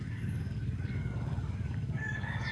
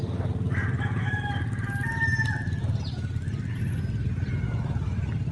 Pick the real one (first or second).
second